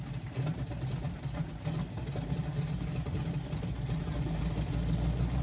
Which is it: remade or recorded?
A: recorded